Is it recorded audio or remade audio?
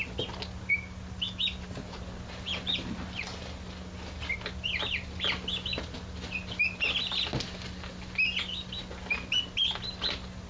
recorded